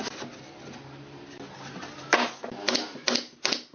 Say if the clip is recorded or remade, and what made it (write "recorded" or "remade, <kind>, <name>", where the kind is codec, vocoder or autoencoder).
recorded